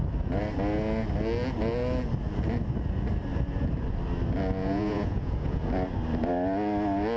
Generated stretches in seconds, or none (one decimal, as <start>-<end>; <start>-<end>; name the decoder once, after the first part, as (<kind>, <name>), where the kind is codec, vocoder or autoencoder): 4.6-5.7 (vocoder, Vocos)